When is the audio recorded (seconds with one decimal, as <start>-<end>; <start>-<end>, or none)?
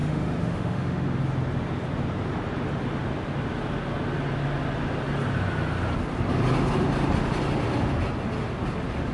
1.2-9.1